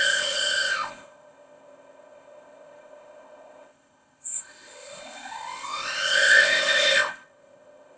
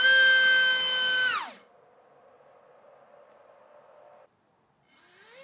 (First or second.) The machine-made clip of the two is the first